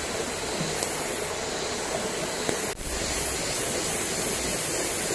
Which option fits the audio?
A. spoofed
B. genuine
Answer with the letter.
B